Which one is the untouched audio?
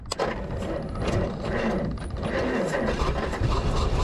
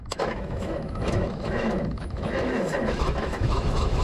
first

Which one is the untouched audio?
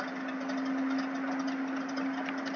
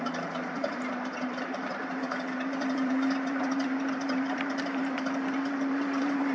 first